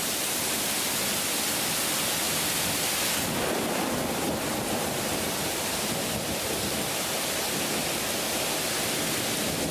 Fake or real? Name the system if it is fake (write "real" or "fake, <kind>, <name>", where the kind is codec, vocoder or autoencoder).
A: real